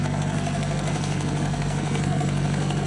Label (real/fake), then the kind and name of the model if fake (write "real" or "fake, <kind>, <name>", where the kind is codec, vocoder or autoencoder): fake, codec, SNAC